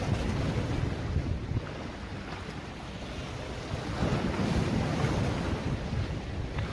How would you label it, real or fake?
real